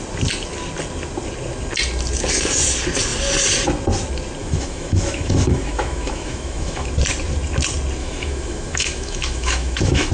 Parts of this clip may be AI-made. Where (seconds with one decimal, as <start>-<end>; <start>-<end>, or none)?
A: 4.4-6.9; 8.0-10.1